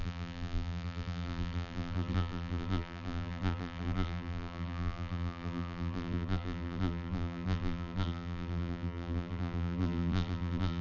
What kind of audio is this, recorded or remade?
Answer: remade